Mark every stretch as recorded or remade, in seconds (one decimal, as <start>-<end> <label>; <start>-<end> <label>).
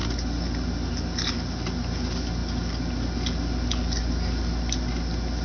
0.0-5.4 recorded